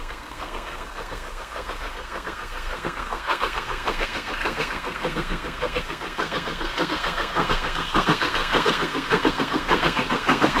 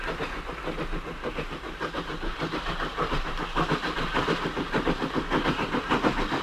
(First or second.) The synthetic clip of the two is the first